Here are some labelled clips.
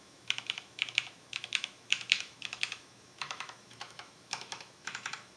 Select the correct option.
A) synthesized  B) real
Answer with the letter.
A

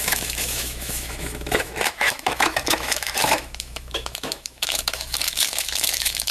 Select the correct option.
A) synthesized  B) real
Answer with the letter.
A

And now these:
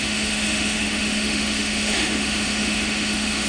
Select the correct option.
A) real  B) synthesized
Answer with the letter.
B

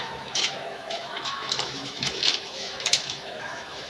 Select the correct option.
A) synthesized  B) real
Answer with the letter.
A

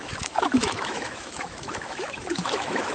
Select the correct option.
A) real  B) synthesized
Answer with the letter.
B